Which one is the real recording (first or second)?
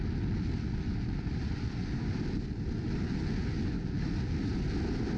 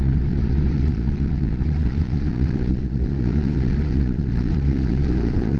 first